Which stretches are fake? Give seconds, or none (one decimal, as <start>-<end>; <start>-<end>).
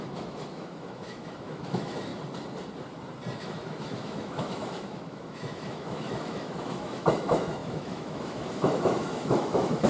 0.0-2.1; 3.4-9.9